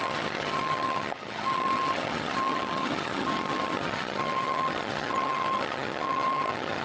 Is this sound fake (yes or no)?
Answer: yes